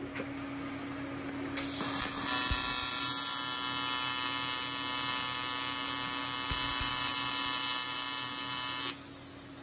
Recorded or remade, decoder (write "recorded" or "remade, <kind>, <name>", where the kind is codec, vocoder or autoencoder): recorded